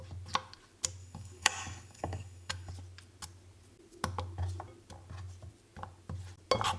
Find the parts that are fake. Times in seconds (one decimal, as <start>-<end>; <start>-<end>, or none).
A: 1.0-2.7